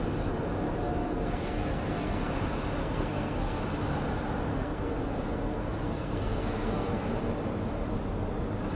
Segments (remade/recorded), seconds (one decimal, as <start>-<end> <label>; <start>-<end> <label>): 0.0-1.0 recorded; 1.0-2.3 remade; 2.3-2.8 recorded; 2.8-3.6 remade; 3.6-4.5 recorded; 4.5-7.1 remade; 7.1-8.7 recorded